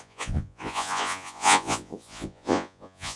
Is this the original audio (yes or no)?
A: no